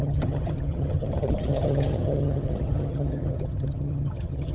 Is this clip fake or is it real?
fake